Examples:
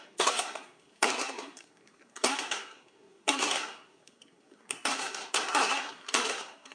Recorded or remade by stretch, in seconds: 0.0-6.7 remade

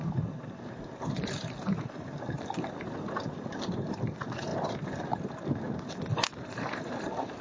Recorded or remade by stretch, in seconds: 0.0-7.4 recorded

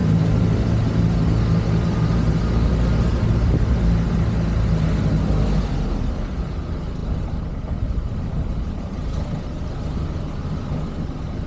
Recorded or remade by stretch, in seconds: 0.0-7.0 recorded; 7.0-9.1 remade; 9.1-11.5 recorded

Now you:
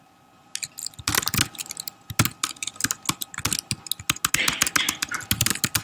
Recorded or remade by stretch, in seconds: 0.0-5.8 recorded

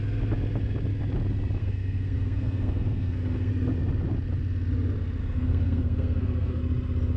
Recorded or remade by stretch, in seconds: 0.0-1.6 recorded; 1.6-3.5 remade; 3.5-5.2 recorded; 5.2-6.6 remade; 6.6-7.2 recorded

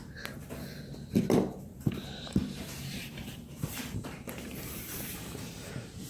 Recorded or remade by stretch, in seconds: 0.0-1.7 recorded; 1.7-5.4 remade; 5.4-6.1 recorded

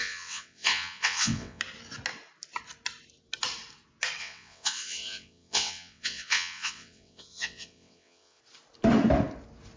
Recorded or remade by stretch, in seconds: 0.0-1.6 remade; 1.6-4.2 recorded; 4.2-8.4 remade; 8.4-9.8 recorded